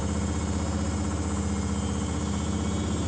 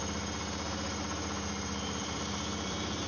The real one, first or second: first